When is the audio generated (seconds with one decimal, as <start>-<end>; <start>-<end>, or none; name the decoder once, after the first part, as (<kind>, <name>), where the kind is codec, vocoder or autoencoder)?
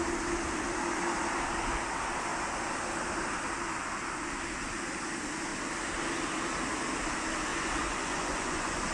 7.5-8.9 (vocoder, Vocos)